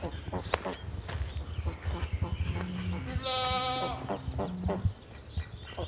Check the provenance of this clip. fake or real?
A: real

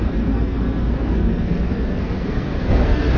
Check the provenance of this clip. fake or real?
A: fake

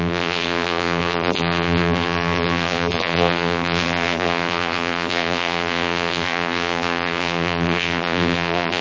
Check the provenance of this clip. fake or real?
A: fake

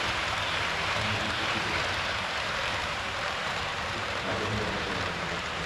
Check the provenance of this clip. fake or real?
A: fake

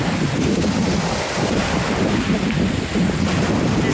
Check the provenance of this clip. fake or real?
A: real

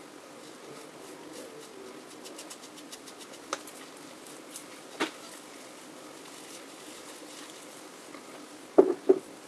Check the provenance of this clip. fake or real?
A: real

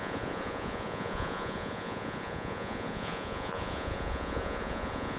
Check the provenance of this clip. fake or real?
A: fake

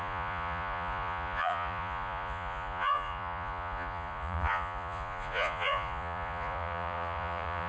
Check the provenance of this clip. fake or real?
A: fake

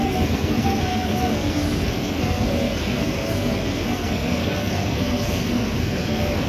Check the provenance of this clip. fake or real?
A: fake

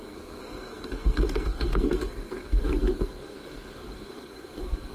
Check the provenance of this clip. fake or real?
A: fake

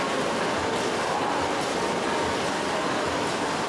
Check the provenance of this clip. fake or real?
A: real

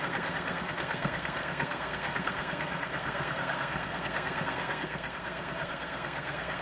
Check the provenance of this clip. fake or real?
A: fake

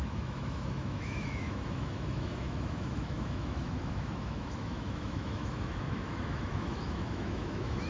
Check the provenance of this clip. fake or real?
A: fake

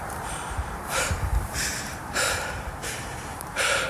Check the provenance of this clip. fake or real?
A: fake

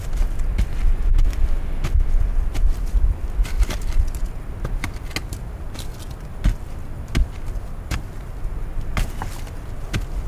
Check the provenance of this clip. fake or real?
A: real